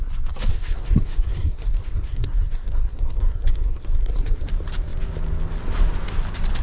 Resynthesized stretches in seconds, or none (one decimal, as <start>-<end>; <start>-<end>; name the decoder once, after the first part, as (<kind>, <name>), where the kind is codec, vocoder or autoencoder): 0.5-4.5 (codec, SNAC)